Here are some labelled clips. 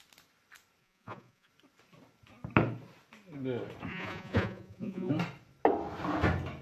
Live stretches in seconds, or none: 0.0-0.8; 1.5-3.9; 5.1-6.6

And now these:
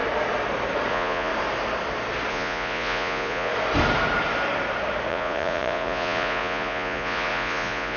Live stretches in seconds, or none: 0.0-0.9; 1.3-2.3; 3.5-5.1